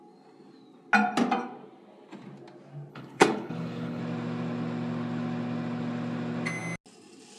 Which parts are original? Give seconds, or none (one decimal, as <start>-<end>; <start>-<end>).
0.0-2.9; 4.0-7.4